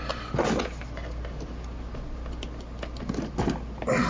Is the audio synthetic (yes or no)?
no